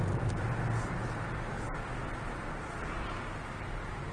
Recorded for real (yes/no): yes